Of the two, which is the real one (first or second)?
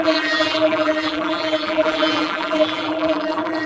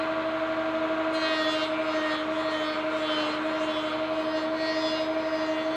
second